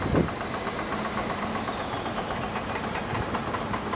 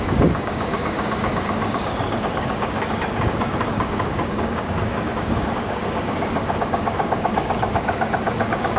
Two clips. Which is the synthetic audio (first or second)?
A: second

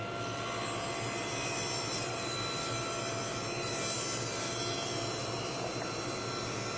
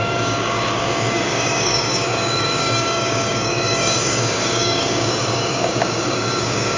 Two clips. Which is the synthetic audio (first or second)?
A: second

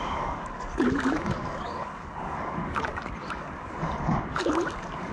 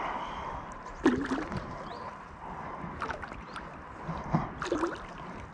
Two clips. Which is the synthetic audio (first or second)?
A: first